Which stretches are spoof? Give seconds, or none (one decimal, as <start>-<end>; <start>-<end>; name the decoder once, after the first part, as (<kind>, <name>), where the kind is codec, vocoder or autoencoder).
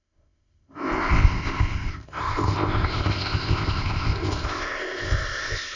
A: 0.0-5.8 (codec, ZipCodec)